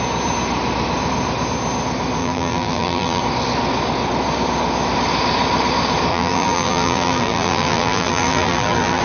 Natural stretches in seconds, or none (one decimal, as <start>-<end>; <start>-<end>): 0.0-2.2; 3.2-6.1